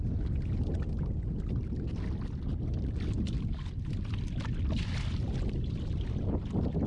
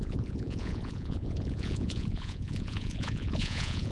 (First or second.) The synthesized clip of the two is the second